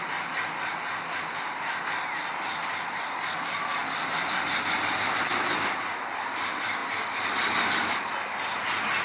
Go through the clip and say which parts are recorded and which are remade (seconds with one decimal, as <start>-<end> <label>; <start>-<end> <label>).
0.0-0.7 remade; 0.7-3.8 recorded; 3.8-6.2 remade; 6.2-6.8 recorded; 6.8-7.9 remade; 7.9-9.0 recorded